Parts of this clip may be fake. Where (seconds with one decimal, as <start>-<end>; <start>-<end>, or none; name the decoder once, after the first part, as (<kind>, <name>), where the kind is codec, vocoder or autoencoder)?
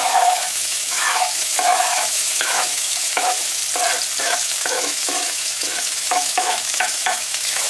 0.0-3.6 (autoencoder, DAC-VAE); 4.2-7.7